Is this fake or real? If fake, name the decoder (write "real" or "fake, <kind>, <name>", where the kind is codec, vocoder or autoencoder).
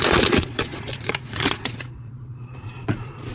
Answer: fake, vocoder, Vocos